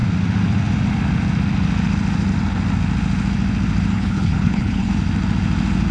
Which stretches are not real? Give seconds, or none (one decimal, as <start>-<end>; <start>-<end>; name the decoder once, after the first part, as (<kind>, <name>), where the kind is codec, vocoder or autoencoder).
3.9-4.9 (codec, HILCodec)